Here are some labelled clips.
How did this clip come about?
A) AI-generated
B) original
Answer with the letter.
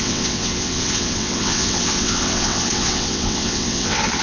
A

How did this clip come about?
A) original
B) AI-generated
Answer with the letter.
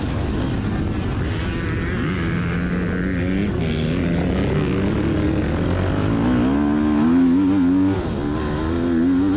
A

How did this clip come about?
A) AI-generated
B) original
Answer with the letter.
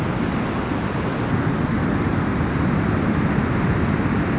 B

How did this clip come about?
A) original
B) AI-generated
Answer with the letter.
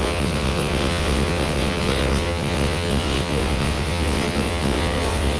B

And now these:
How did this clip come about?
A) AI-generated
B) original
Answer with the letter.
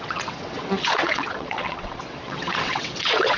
A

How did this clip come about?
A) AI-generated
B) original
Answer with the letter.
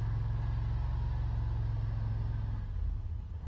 B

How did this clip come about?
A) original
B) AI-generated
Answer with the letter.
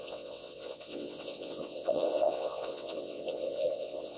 B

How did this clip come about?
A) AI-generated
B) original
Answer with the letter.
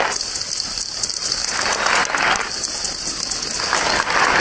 B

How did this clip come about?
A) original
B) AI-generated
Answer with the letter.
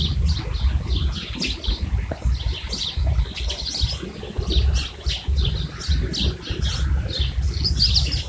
A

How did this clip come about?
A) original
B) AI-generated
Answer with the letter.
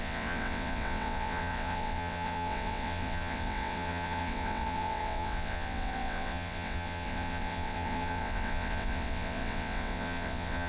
B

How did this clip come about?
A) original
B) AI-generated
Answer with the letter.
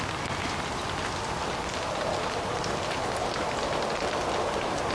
A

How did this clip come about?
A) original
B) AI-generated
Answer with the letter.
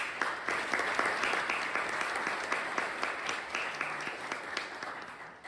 A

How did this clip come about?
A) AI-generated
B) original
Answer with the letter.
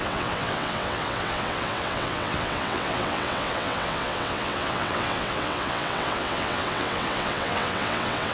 A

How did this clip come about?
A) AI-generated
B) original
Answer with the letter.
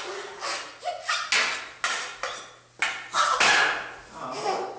B